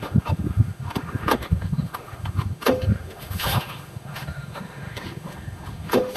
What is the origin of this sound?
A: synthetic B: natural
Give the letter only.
A